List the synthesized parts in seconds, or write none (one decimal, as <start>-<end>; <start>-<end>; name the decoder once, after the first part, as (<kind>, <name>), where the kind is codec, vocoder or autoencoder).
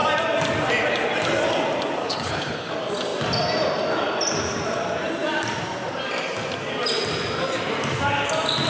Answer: 2.0-2.7 (codec, HILCodec)